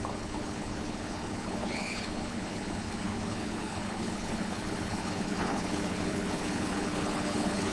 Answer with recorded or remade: remade